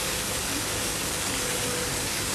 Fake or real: fake